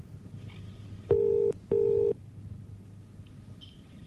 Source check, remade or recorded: recorded